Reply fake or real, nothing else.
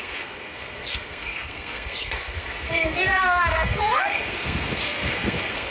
fake